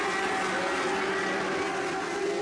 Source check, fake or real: real